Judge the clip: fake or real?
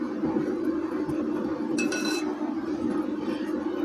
real